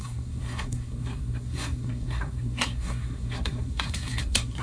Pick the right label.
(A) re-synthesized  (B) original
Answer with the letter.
A